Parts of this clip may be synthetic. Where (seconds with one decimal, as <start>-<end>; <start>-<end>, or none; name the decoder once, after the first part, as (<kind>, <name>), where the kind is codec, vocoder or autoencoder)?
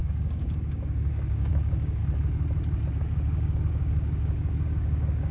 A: 0.0-2.0 (codec, DAC); 2.9-5.3